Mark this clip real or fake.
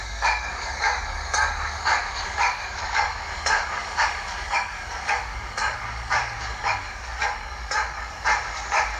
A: fake